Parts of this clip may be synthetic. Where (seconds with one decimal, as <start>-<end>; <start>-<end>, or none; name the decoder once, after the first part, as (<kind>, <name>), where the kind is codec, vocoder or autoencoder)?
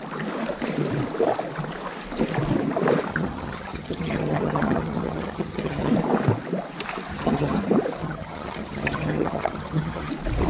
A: 3.1-5.9 (vocoder, HiFi-GAN); 7.1-7.6; 8.0-10.1